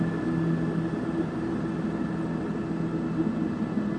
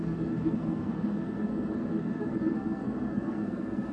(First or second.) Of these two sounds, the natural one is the first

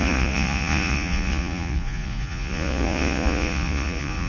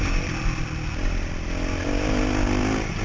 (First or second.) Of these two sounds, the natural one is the second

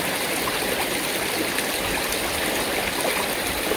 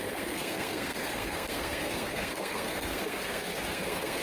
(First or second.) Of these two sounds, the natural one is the first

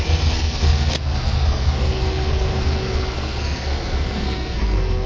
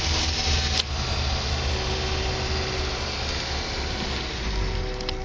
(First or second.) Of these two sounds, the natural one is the second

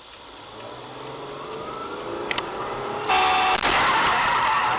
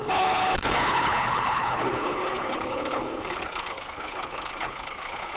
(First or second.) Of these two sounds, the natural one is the first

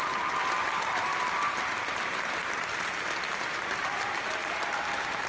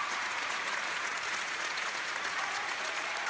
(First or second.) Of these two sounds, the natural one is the first